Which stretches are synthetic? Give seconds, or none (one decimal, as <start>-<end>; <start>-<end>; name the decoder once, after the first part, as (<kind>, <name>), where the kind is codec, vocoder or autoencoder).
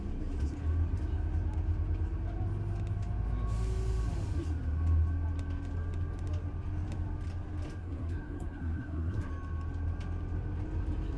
7.8-9.3 (codec, SNAC)